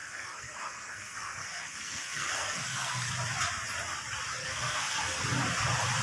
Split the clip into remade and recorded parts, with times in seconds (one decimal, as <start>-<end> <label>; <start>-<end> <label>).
0.0-3.1 remade; 3.1-4.4 recorded; 4.4-5.2 remade; 5.2-6.0 recorded